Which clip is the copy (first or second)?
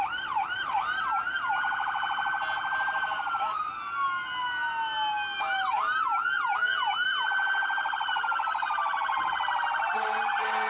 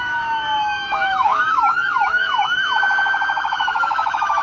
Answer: second